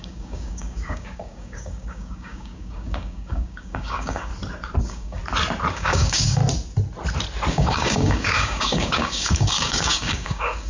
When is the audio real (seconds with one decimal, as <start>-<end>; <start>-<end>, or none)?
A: 4.3-4.8; 5.2-5.7; 6.4-7.5